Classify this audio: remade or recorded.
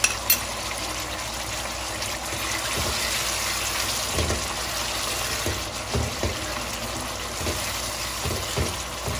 recorded